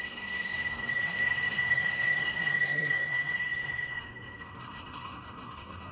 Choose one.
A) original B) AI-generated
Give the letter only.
B